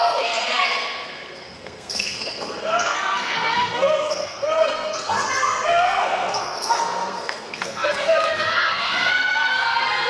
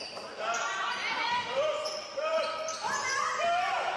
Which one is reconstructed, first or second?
first